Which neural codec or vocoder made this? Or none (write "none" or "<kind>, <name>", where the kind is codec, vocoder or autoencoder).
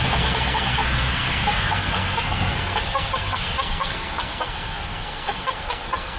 codec, SNAC